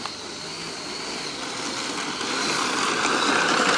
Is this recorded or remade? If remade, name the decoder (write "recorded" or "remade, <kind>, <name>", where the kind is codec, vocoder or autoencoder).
recorded